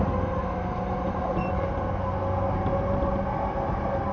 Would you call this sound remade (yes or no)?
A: no